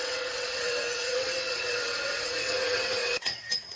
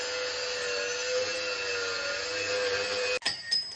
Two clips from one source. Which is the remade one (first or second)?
first